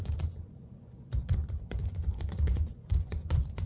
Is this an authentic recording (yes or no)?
no